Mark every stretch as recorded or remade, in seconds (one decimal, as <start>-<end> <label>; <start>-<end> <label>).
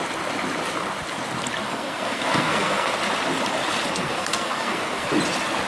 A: 0.0-1.6 recorded; 1.6-2.9 remade; 2.9-3.9 recorded; 3.9-5.1 remade; 5.1-5.7 recorded